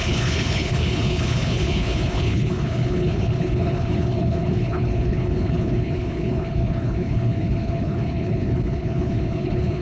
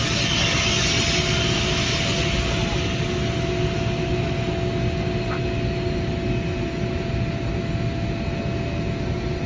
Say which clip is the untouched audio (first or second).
second